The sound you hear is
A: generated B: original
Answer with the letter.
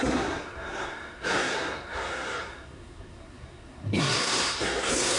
A